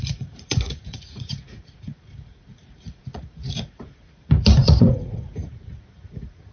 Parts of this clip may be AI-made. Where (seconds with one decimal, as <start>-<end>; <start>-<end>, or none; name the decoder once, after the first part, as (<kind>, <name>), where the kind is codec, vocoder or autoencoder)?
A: 0.0-6.5 (vocoder, Vocos)